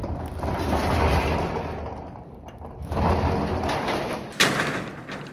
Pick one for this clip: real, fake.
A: real